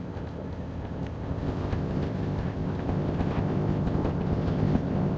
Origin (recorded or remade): remade